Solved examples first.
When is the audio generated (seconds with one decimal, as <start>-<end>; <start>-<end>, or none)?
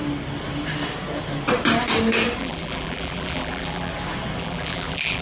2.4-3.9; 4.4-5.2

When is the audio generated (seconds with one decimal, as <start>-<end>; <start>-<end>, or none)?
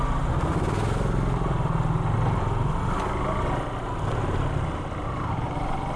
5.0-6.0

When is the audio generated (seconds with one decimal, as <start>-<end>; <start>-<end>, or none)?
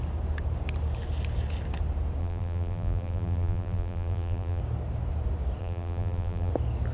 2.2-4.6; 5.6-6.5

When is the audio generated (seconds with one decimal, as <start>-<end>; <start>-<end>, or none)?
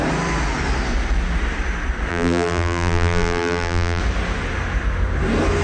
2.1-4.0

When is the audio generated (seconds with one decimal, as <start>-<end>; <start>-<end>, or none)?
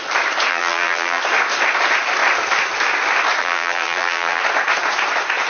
0.5-1.2; 3.4-4.4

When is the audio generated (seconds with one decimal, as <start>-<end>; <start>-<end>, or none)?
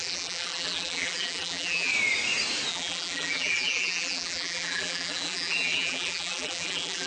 0.0-1.9; 2.7-7.1